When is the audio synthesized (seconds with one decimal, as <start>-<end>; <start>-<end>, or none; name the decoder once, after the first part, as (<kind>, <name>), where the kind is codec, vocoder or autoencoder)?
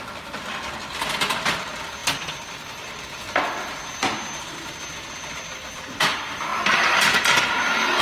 6.5-7.6 (vocoder, BigVGAN v2)